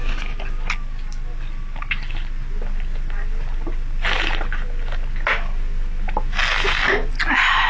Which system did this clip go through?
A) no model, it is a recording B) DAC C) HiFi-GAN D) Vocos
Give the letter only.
A